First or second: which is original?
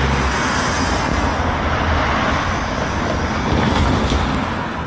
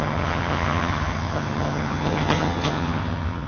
first